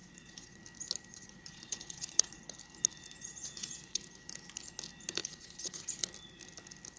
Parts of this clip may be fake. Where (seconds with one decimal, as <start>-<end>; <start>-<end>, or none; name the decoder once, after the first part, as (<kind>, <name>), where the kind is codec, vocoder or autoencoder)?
0.0-0.6 (vocoder, Vocos); 1.1-2.4; 3.2-4.0; 5.2-5.8